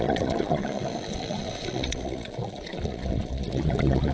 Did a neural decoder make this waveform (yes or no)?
yes